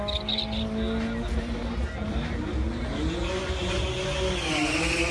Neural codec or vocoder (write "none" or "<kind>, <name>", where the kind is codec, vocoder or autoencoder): none